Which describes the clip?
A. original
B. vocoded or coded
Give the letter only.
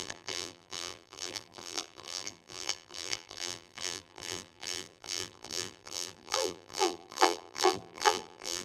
B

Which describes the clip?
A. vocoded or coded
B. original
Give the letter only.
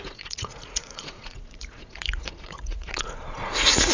A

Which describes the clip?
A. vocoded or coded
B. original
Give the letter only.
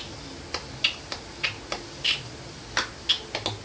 B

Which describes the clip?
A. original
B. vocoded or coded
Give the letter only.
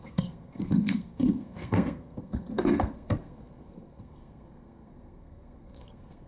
B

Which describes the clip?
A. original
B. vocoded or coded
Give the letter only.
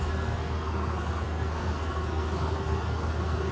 B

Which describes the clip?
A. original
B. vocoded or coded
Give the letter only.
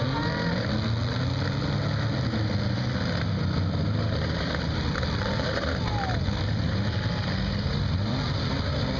A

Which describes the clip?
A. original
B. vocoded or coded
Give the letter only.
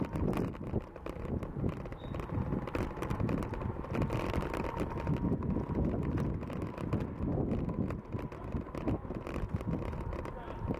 A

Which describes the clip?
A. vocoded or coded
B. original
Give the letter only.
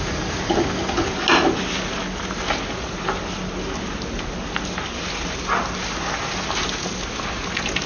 B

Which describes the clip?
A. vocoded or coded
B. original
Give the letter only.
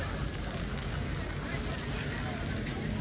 B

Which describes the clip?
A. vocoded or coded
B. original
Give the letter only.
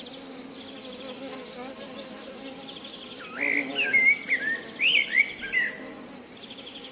B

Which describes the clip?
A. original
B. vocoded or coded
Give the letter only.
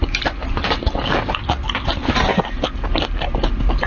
A